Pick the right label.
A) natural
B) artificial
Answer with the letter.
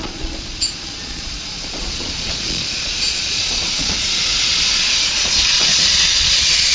B